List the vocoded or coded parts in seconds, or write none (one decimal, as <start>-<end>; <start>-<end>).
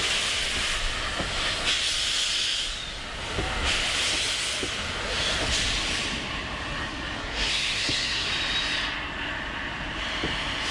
7.2-8.3